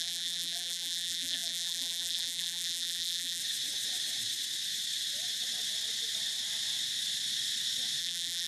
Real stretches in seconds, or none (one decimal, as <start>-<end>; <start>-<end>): 3.4-8.0